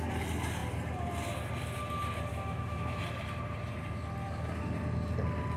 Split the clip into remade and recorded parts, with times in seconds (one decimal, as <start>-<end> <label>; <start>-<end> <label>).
0.0-2.3 recorded; 2.3-3.0 remade; 3.0-5.6 recorded